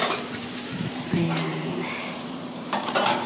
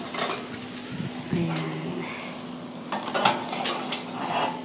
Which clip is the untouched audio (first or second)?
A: second